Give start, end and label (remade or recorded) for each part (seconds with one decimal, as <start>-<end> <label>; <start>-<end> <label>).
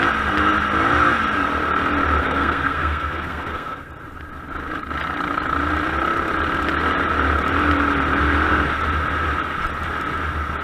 0.0-2.2 recorded; 2.2-3.9 remade; 3.9-10.6 recorded